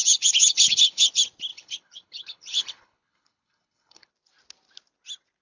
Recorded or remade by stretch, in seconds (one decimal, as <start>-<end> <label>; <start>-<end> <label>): 0.0-1.1 remade; 1.1-1.5 recorded; 1.5-4.1 remade; 4.1-5.4 recorded